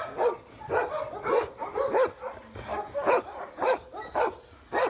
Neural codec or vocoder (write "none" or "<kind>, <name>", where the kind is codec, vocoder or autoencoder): none